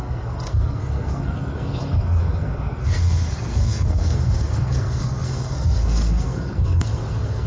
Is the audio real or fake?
fake